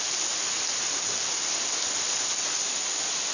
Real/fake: real